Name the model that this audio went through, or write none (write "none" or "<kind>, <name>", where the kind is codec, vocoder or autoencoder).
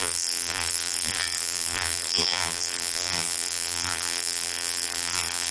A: vocoder, BigVGAN v2